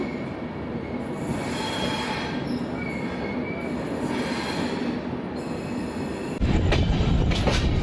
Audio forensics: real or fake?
real